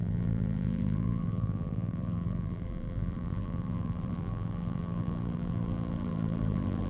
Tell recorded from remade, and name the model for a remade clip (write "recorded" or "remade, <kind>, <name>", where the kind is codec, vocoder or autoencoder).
remade, vocoder, BigVGAN v2